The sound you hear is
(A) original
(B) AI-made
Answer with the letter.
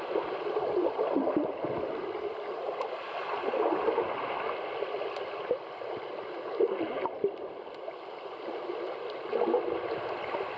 A